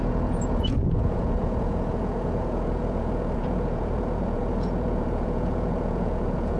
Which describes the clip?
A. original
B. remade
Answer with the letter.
B